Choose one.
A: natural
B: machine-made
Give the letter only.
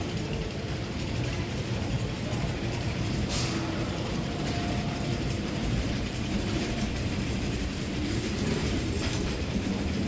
B